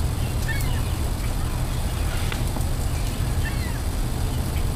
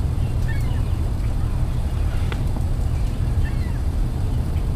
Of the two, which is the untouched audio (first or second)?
first